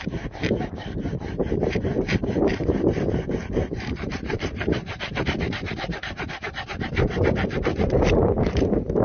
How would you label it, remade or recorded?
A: remade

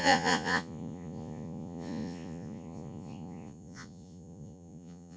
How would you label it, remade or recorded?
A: remade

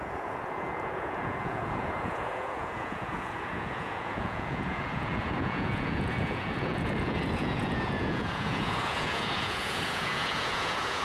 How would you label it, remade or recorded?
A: remade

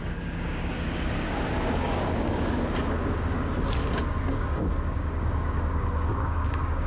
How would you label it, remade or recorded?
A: remade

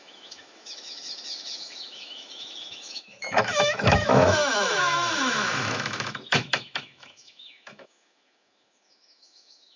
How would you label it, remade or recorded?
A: remade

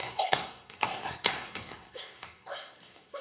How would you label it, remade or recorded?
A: remade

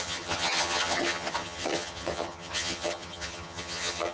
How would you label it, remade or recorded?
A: remade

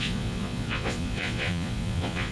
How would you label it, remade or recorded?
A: remade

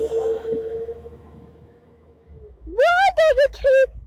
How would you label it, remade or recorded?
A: remade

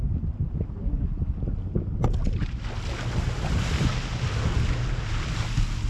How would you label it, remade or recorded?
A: recorded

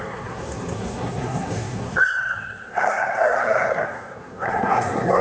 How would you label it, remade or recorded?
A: remade